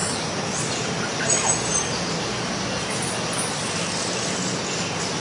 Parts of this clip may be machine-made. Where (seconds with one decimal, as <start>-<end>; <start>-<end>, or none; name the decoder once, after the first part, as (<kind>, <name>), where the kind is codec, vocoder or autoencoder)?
none